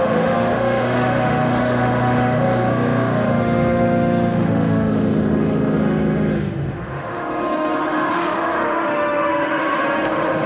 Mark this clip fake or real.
fake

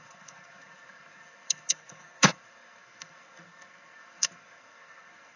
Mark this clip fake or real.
fake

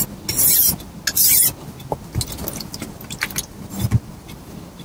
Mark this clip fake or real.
real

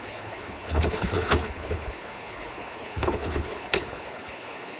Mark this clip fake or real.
fake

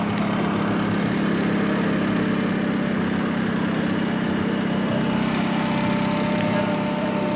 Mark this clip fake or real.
real